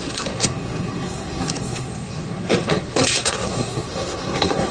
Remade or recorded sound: remade